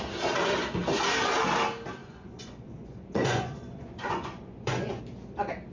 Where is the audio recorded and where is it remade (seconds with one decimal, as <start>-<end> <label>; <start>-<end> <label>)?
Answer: 0.0-2.0 recorded; 2.0-5.0 remade; 5.0-5.7 recorded